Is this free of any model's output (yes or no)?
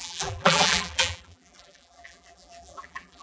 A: no